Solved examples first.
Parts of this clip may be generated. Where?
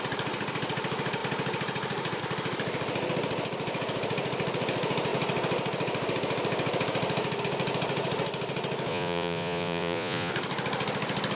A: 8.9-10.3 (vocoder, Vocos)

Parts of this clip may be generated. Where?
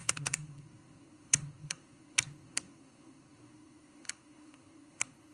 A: 0.0-5.3 (codec, SNAC)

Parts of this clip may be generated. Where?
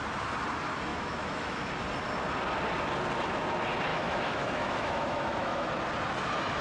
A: 0.9-1.7 (autoencoder, DAC-VAE); 3.9-5.7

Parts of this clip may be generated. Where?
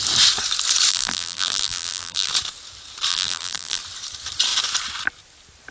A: 0.9-2.3 (vocoder, BigVGAN v2); 3.1-3.8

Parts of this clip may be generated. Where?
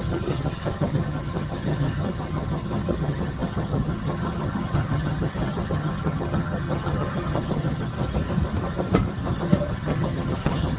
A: 0.0-7.9 (vocoder, HiFi-GAN); 9.7-10.8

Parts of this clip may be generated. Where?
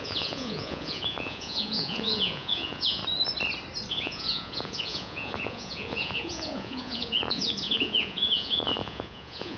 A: 0.0-3.0 (vocoder, Vocos); 3.9-9.6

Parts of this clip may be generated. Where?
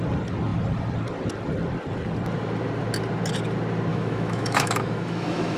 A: 3.9-5.6 (autoencoder, DAC-VAE)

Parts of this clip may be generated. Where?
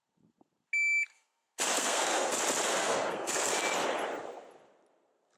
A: 1.1-2.3 (codec, SNAC); 2.7-3.5